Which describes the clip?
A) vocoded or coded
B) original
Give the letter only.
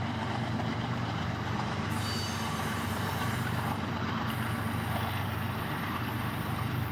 A